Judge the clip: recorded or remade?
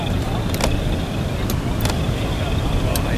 recorded